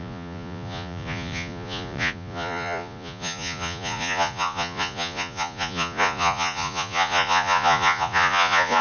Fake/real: fake